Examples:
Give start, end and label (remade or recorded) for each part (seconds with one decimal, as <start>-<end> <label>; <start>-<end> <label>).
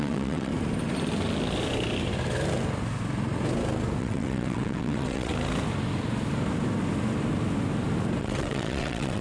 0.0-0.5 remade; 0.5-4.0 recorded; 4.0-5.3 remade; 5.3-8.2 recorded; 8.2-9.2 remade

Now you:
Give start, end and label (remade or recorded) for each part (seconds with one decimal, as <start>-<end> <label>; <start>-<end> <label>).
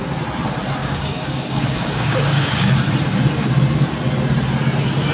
0.0-0.8 recorded; 0.8-2.8 remade; 2.8-5.1 recorded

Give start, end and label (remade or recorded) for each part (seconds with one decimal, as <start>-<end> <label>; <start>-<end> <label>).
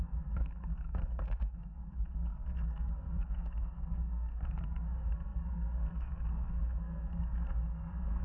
0.0-8.2 remade